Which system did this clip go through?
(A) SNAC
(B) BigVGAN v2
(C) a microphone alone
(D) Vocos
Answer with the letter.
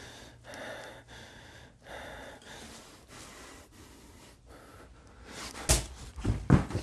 C